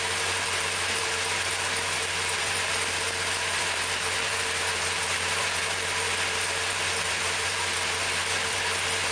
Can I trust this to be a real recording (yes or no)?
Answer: no